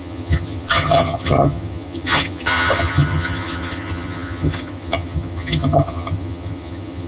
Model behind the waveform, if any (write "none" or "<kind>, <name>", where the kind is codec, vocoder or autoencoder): vocoder, HiFi-GAN